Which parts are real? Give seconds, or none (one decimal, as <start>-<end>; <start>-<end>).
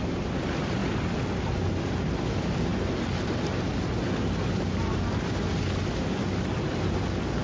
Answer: 0.0-7.4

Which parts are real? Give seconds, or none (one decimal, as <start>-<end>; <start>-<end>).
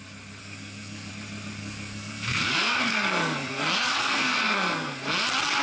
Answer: 0.0-0.4; 1.1-1.6; 5.0-5.6